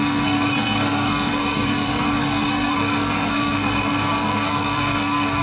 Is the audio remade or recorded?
remade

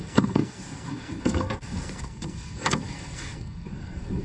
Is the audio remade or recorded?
remade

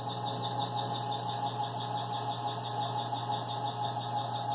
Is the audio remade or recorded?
recorded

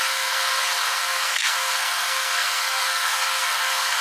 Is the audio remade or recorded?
remade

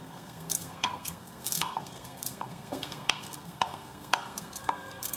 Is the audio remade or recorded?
remade